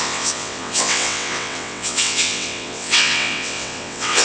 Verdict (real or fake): fake